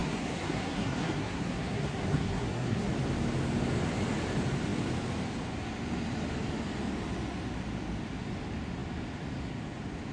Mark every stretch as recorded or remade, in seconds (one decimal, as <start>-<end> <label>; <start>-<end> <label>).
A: 0.0-2.9 remade; 2.9-10.1 recorded